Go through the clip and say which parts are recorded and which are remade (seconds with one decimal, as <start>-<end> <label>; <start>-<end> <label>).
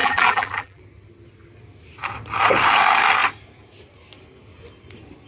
0.0-0.8 remade; 0.8-5.3 recorded